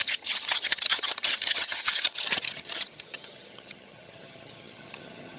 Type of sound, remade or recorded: remade